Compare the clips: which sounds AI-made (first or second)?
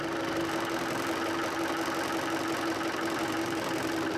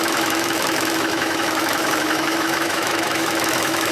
second